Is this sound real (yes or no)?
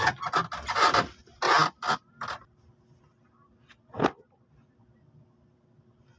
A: yes